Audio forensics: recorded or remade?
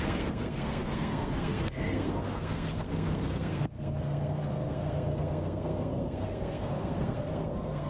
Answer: remade